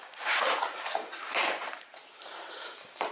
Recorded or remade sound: remade